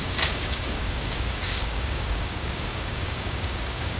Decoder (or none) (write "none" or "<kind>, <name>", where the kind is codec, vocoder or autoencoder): codec, DAC